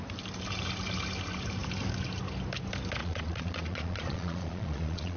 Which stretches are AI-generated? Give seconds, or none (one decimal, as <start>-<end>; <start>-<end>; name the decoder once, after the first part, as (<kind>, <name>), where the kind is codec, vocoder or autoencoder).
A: 3.0-5.2 (vocoder, Vocos)